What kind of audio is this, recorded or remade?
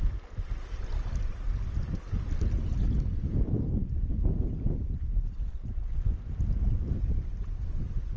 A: recorded